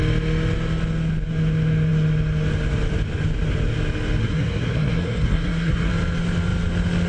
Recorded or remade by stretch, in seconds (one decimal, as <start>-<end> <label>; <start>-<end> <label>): 0.0-4.2 recorded; 4.2-5.9 remade; 5.9-7.1 recorded